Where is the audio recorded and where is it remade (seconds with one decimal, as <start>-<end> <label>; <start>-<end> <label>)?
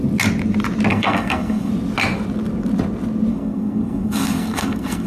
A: 0.0-0.9 recorded; 0.9-1.7 remade; 1.7-3.3 recorded; 3.3-5.1 remade